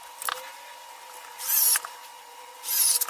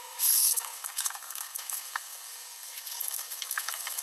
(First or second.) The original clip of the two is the first